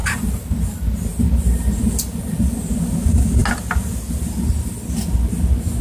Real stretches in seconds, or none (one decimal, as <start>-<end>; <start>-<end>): 0.0-5.8